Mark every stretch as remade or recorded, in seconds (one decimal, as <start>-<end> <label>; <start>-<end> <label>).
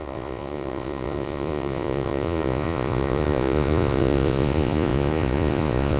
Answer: 0.0-6.0 remade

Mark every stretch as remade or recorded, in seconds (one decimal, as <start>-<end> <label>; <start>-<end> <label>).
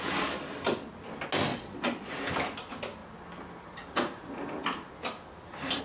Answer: 0.0-1.5 recorded; 1.5-2.1 remade; 2.1-5.8 recorded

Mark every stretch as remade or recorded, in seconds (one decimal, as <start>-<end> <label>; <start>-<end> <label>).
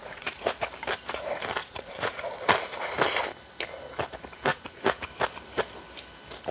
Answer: 0.0-0.6 remade; 0.6-1.6 recorded; 1.6-2.3 remade; 2.3-4.5 recorded; 4.5-5.0 remade; 5.0-6.5 recorded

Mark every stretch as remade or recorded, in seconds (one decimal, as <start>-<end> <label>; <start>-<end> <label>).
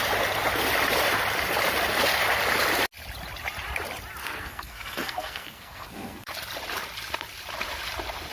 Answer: 0.0-4.2 recorded; 4.2-6.3 remade; 6.3-8.3 recorded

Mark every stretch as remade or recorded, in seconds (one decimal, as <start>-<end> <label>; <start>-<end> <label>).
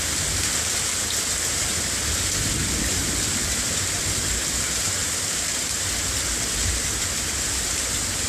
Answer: 0.0-0.9 remade; 0.9-1.5 recorded; 1.5-8.3 remade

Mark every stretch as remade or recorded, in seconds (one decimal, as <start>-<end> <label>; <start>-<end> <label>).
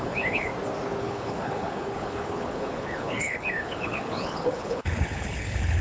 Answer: 0.0-0.5 remade; 0.5-1.0 recorded; 1.0-5.8 remade